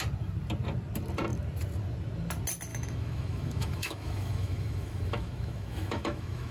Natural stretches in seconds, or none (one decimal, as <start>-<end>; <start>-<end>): 0.0-2.7